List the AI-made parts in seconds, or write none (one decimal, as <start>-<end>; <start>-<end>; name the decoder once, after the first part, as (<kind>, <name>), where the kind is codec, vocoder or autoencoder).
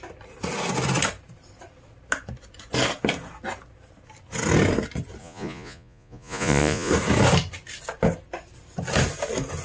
5.2-6.9 (vocoder, Vocos)